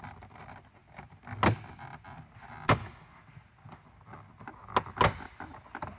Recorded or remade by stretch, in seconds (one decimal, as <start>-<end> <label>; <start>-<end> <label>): 0.0-6.0 recorded